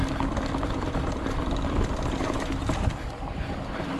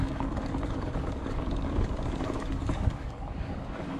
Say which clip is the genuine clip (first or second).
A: first